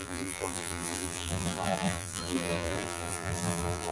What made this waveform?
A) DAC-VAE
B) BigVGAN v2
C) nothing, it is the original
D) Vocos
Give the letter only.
B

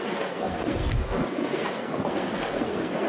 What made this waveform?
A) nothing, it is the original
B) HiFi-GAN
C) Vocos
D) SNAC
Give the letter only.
D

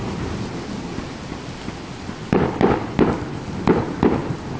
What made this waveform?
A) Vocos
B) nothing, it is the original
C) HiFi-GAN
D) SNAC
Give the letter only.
B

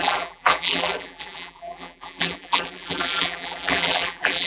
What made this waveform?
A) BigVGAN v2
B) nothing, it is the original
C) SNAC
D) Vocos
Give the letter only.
A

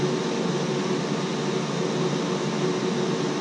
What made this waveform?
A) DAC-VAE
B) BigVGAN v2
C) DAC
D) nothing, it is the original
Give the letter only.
D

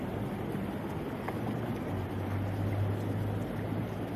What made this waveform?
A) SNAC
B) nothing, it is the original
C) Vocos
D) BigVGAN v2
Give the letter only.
B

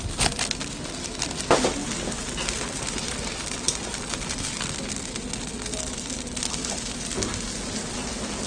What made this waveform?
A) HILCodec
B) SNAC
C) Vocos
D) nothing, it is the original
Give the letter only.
D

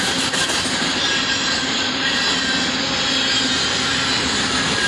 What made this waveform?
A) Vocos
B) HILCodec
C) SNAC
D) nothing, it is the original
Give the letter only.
D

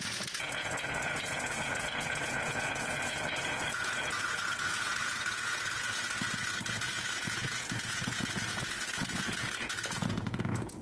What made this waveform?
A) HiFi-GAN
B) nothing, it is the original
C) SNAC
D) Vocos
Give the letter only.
D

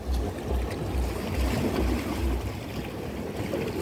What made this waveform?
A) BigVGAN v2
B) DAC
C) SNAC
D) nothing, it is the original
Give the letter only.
D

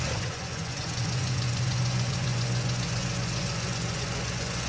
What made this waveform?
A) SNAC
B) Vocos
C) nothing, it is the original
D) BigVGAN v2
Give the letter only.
B